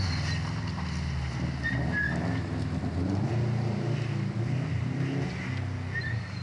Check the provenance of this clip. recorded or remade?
recorded